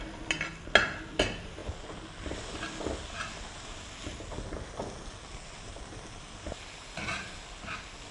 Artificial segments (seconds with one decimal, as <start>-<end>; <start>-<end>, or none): none

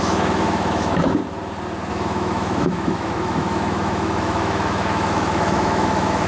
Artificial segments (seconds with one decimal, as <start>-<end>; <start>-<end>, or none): 0.0-1.2; 1.9-6.3

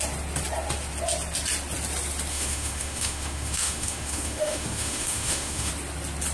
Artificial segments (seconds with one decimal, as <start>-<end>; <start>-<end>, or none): 2.3-5.7